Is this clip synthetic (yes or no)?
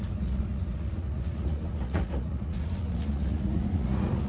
yes